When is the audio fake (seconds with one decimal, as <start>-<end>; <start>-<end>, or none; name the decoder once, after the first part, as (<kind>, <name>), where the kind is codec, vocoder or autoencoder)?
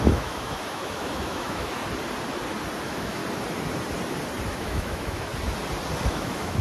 0.0-1.8 (autoencoder, DAC-VAE); 2.8-3.2; 4.5-5.3; 6.0-6.6